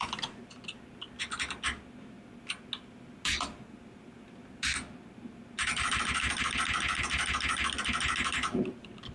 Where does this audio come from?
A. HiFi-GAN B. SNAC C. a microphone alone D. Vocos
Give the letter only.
C